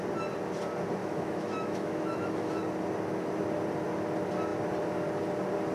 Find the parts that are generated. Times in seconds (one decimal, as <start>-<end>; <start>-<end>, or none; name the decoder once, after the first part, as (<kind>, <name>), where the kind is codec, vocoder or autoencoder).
1.0-2.6 (autoencoder, DAC-VAE)